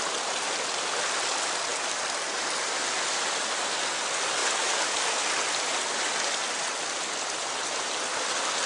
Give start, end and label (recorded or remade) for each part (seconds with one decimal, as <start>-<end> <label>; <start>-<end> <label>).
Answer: 0.0-4.4 remade; 4.4-5.1 recorded; 5.1-6.4 remade; 6.4-8.7 recorded